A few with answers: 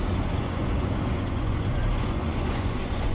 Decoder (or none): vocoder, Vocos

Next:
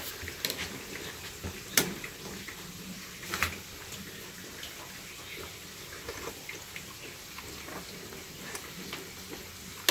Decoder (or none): none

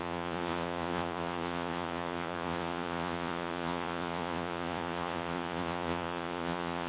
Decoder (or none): vocoder, Vocos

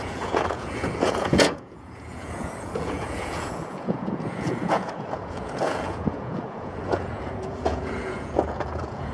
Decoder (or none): vocoder, Vocos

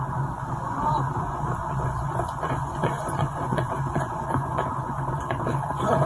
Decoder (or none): vocoder, Vocos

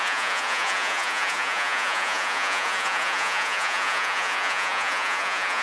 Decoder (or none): vocoder, Vocos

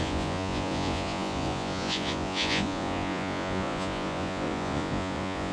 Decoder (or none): vocoder, Vocos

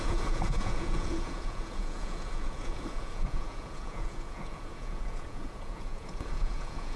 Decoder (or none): vocoder, Vocos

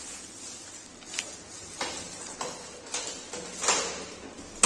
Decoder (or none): none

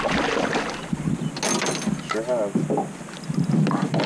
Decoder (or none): none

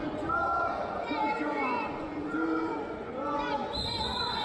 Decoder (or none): vocoder, Vocos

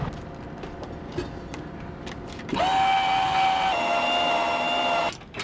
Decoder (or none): none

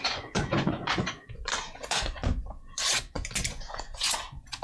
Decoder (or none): vocoder, Vocos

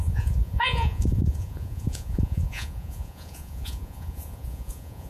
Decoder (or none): vocoder, Vocos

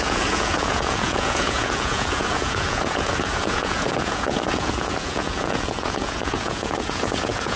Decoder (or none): vocoder, Vocos